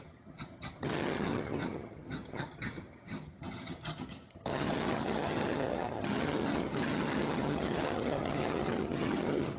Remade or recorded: remade